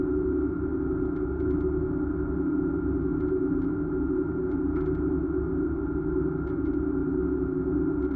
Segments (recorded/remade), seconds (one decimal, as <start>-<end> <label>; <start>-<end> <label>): 0.0-8.2 recorded